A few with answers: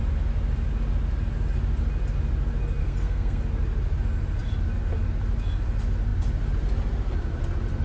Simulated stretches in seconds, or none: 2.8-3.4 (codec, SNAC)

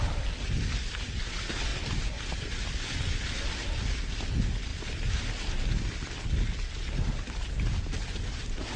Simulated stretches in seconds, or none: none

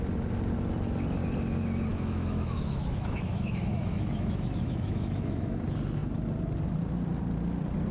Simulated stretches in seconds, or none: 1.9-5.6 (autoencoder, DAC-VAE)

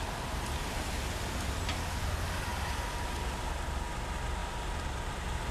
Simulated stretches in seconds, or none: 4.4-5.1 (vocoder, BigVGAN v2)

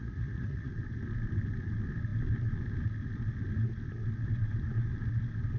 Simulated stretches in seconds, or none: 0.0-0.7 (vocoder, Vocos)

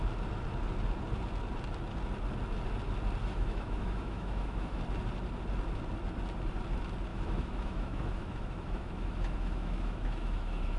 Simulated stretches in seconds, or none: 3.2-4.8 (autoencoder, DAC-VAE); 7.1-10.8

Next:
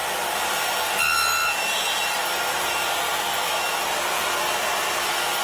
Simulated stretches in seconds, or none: none

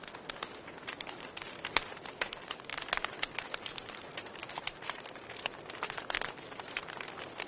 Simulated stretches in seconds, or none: 4.4-5.2 (vocoder, BigVGAN v2)